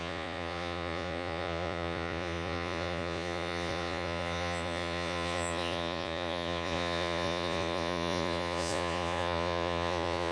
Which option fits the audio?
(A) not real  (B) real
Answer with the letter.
A